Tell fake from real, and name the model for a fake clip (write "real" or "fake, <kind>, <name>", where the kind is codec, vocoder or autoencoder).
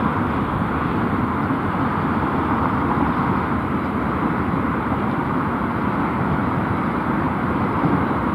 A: real